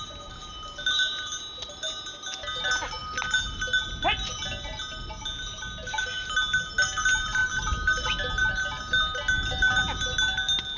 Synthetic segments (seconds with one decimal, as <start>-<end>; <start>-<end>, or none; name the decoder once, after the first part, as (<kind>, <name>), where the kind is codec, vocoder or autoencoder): none